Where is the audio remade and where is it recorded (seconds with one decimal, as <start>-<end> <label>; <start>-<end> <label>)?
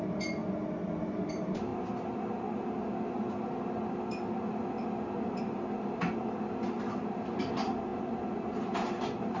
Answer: 0.0-0.4 remade; 0.4-1.0 recorded; 1.0-1.7 remade; 1.7-5.4 recorded; 5.4-9.4 remade